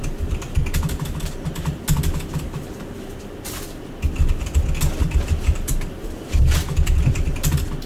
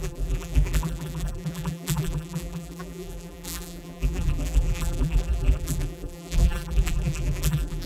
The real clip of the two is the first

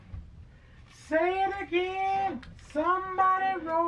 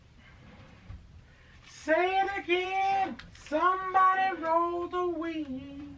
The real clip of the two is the first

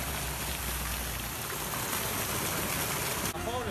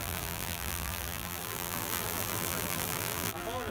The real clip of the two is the first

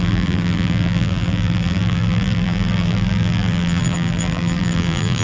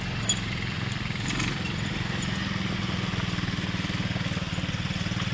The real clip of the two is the second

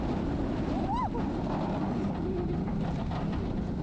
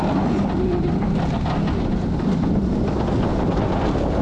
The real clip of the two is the second